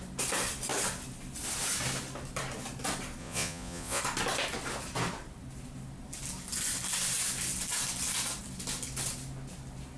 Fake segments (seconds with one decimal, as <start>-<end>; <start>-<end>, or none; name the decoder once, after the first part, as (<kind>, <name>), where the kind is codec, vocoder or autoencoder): 3.2-4.0 (vocoder, Vocos)